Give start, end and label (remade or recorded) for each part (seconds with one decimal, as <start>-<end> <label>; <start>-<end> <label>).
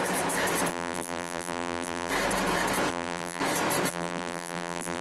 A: 0.0-0.7 recorded; 0.7-2.1 remade; 2.1-2.9 recorded; 2.9-3.4 remade; 3.4-3.9 recorded; 3.9-5.0 remade